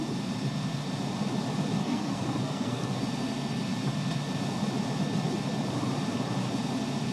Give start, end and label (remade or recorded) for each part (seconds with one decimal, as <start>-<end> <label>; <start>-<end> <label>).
0.0-1.8 recorded; 1.8-3.0 remade; 3.0-7.1 recorded